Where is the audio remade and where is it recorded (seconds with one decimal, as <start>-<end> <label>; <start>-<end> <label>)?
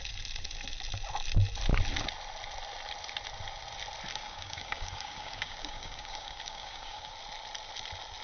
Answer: 0.0-4.1 recorded; 4.1-7.1 remade; 7.1-8.2 recorded